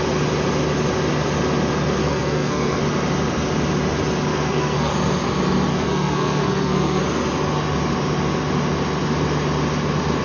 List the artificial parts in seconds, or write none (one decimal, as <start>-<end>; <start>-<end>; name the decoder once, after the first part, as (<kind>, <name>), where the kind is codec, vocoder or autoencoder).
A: 2.0-2.8 (codec, SNAC); 4.3-4.9; 5.7-7.0